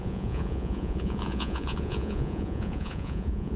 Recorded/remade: remade